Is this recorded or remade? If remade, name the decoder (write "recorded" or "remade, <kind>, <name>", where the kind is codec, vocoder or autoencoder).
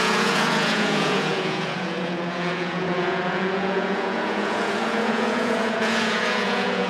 remade, vocoder, Vocos